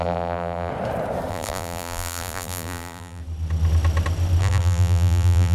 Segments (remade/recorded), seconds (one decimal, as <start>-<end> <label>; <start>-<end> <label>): 0.0-0.7 remade; 0.7-1.3 recorded; 1.3-3.2 remade; 3.2-4.4 recorded; 4.4-5.5 remade